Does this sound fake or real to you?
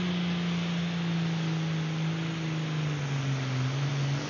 real